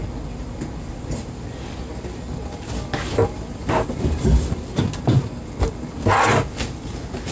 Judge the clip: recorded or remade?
recorded